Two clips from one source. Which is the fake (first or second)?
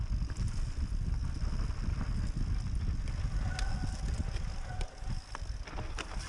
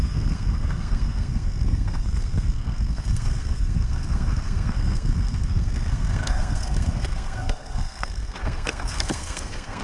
second